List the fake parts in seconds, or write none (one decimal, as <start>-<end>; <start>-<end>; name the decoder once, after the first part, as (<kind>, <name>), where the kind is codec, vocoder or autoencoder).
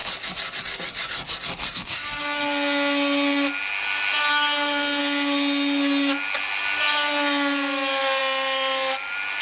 1.6-2.2 (codec, SNAC); 4.3-5.0